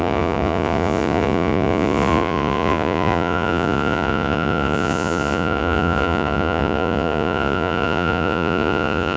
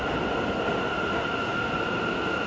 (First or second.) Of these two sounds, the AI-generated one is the first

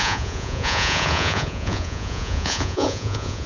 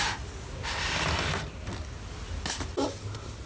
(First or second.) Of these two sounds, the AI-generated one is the first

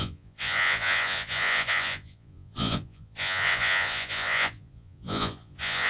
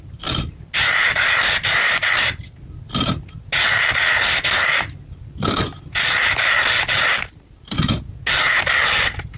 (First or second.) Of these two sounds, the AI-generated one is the first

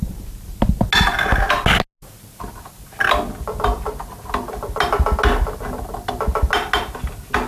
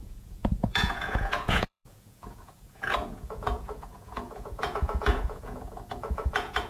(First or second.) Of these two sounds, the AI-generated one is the second